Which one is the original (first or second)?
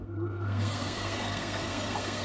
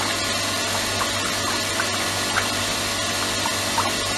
second